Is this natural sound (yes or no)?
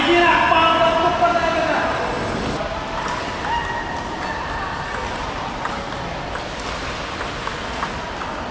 yes